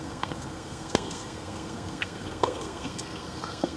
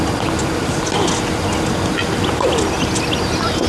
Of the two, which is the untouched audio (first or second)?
second